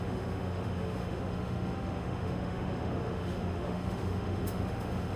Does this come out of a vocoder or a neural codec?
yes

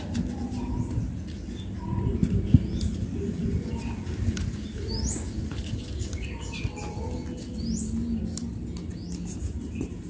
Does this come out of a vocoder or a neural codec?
no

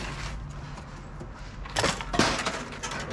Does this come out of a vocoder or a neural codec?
no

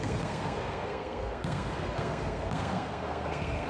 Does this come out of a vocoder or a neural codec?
yes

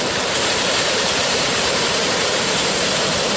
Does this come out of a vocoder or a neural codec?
yes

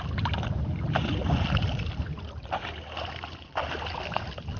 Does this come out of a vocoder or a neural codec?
no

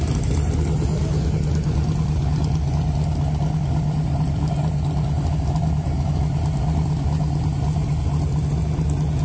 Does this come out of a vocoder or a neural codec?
no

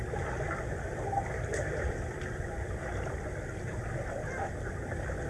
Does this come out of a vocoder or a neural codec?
no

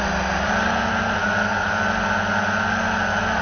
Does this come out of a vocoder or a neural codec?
no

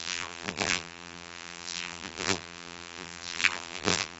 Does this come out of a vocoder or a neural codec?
yes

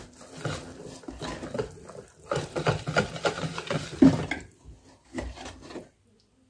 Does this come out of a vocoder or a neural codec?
no